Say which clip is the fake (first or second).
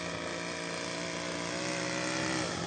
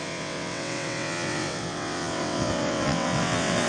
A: second